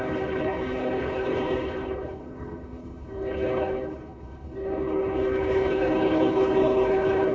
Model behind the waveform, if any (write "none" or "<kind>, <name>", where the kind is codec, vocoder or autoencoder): codec, HILCodec